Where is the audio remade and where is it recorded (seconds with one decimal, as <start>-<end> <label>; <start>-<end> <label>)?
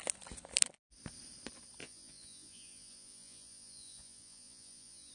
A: 0.0-1.8 recorded; 1.8-5.1 remade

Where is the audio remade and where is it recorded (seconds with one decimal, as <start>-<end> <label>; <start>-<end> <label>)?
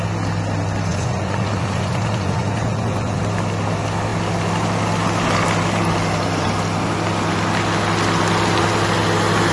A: 0.0-0.9 recorded; 0.9-3.2 remade; 3.2-9.5 recorded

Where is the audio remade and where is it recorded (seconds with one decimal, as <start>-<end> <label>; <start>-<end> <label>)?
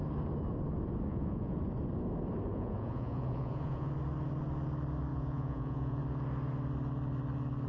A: 0.0-1.1 recorded; 1.1-1.6 remade; 1.6-2.5 recorded; 2.5-3.9 remade; 3.9-5.1 recorded; 5.1-6.0 remade; 6.0-7.7 recorded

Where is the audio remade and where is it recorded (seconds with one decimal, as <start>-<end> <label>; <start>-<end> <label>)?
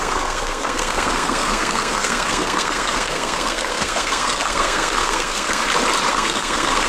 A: 0.0-5.6 remade; 5.6-6.1 recorded; 6.1-6.9 remade